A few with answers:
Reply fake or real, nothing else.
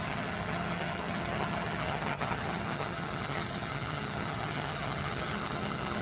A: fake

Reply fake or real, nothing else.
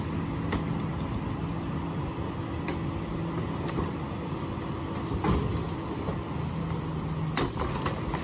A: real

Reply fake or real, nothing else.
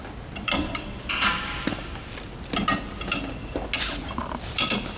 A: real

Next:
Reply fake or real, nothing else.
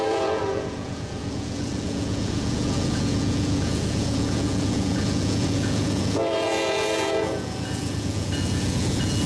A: fake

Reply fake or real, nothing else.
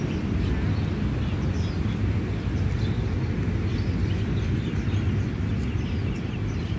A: real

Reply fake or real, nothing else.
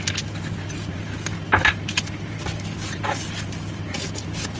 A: real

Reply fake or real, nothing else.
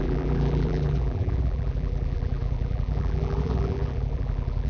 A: fake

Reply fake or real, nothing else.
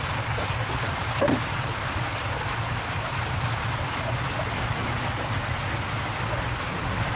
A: real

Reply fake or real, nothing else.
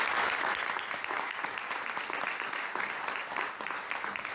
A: real